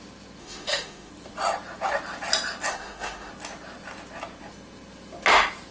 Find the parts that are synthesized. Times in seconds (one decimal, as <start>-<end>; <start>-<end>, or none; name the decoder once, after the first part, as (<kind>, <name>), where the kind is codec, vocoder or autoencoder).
0.4-1.1 (autoencoder, DAC-VAE); 2.7-3.3